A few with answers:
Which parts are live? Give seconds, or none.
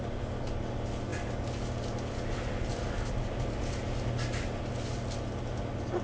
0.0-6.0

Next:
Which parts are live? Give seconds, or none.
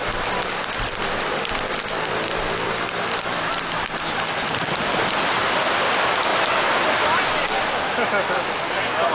0.0-9.1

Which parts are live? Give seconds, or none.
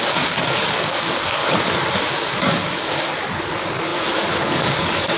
1.4-2.1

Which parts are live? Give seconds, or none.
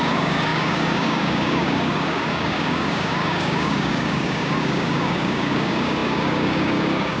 none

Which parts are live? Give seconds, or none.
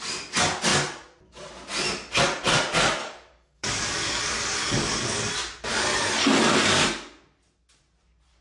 0.0-3.0; 5.3-5.7; 6.8-8.4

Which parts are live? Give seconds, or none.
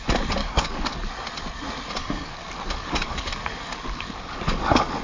0.0-0.4; 1.1-2.0